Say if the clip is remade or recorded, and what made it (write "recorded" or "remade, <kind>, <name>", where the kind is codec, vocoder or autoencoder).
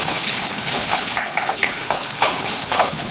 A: remade, codec, HILCodec